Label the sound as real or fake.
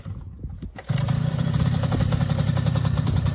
fake